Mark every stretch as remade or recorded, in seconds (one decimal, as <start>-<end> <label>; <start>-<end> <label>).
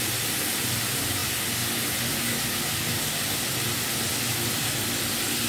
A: 0.0-5.5 recorded